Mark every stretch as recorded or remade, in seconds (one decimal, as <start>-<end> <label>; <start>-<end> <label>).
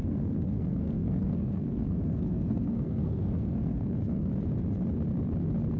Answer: 0.0-4.3 remade; 4.3-5.8 recorded